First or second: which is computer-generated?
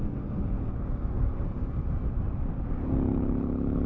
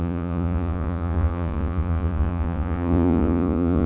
second